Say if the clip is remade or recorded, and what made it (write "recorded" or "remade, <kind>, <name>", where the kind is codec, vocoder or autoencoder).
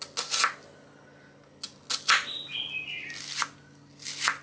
recorded